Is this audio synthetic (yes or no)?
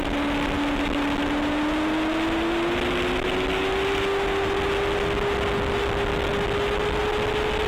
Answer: no